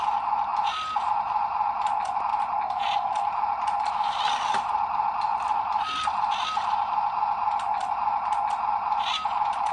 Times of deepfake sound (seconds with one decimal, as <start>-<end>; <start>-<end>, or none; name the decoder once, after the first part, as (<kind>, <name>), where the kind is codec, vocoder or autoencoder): none